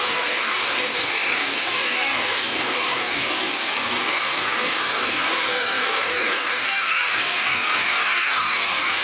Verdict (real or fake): fake